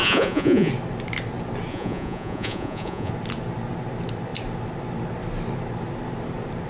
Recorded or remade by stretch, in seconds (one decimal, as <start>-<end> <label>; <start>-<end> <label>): 0.0-0.7 remade; 0.7-1.7 recorded; 1.7-3.1 remade; 3.1-6.7 recorded